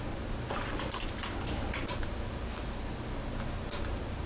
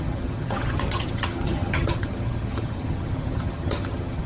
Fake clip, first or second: second